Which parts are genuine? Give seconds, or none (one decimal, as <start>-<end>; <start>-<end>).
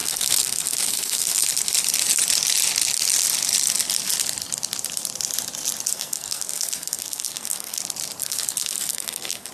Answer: 1.5-5.9; 7.8-8.2